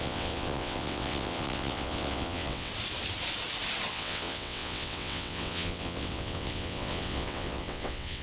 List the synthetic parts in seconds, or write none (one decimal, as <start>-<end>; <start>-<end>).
0.0-2.7; 3.9-8.2